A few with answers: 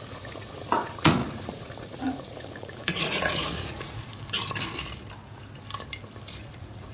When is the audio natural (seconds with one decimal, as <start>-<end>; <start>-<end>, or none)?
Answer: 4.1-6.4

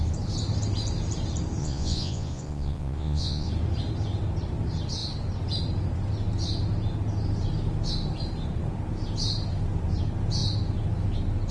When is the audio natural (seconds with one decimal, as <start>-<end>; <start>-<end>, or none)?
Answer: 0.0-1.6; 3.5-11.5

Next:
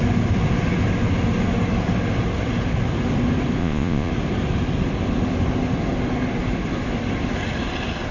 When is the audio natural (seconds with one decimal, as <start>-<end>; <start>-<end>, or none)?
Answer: 0.0-3.6; 4.1-8.1

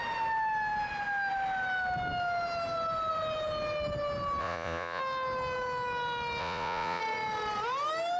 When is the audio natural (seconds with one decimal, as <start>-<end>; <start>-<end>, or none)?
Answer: 0.0-4.4; 5.0-6.4; 7.0-8.2

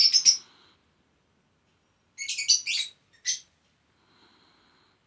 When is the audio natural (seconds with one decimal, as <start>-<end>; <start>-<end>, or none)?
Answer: 0.0-5.1

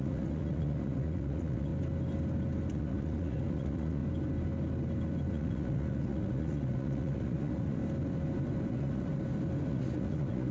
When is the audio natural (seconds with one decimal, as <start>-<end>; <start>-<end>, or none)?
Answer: 1.7-2.7; 4.0-5.3; 7.8-8.7; 9.1-9.7

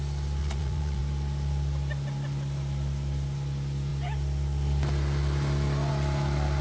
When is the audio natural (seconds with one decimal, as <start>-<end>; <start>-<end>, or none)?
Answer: 0.0-0.4; 1.0-6.6

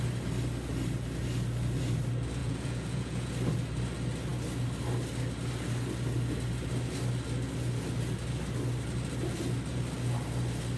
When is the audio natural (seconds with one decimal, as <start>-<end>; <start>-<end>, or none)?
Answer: 0.0-2.4; 3.3-10.8